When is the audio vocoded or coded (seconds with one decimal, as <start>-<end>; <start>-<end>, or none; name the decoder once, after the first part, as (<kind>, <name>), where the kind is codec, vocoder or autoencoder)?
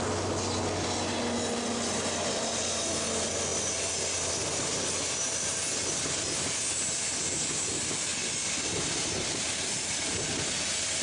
none